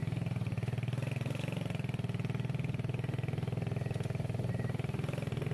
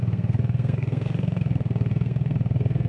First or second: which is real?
first